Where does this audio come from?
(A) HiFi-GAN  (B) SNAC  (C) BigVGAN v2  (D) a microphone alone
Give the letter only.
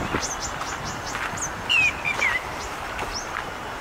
D